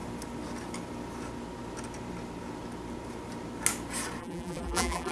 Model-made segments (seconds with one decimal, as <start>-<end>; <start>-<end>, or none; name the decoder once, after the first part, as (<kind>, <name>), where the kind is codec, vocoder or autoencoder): 4.2-5.1 (vocoder, BigVGAN v2)